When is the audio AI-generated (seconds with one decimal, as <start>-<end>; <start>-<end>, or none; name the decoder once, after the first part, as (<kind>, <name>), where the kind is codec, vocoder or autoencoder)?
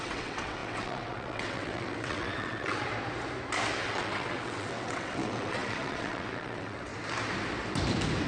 0.0-2.9 (vocoder, WaveNeXt); 3.8-6.9